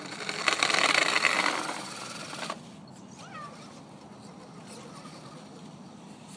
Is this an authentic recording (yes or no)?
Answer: no